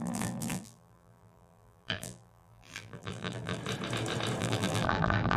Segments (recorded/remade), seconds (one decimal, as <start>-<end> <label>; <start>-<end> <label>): 0.0-3.6 remade; 3.6-4.4 recorded; 4.4-5.4 remade